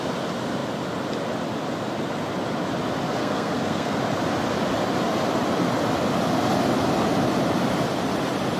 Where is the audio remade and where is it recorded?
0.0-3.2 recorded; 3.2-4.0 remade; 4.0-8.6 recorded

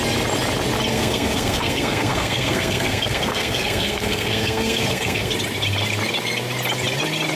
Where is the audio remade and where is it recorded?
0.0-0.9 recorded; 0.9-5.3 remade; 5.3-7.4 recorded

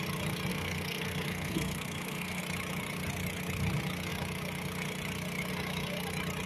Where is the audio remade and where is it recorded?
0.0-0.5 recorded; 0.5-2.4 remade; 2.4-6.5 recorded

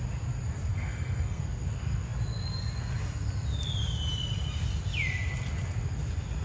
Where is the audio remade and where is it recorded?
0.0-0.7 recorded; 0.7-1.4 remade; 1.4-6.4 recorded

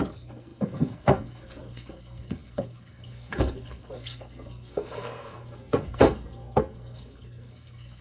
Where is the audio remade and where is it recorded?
0.0-8.0 remade